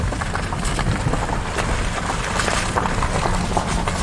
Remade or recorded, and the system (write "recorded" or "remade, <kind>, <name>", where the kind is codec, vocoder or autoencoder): recorded